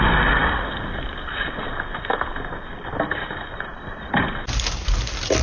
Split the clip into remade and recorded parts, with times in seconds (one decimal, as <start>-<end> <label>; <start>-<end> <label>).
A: 0.0-0.4 recorded; 0.4-1.3 remade; 1.3-3.7 recorded; 3.7-4.3 remade; 4.3-5.4 recorded